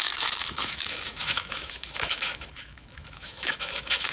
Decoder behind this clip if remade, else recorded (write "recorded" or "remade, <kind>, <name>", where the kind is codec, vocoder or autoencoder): remade, autoencoder, DAC-VAE